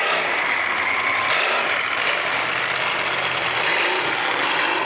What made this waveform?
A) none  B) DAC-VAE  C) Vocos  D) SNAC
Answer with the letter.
A